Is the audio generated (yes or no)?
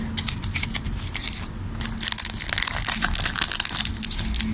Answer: no